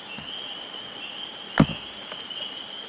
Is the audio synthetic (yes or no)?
no